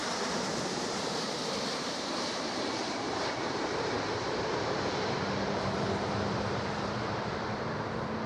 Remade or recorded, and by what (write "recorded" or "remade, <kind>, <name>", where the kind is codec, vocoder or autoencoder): remade, vocoder, BigVGAN v2